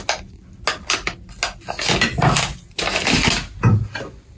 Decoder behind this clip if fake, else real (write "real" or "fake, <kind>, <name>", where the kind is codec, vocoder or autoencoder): real